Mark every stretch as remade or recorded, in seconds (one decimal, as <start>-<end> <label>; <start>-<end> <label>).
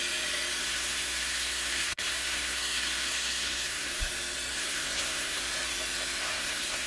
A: 0.0-0.6 recorded; 0.6-4.1 remade; 4.1-4.5 recorded; 4.5-5.4 remade; 5.4-6.2 recorded; 6.2-6.9 remade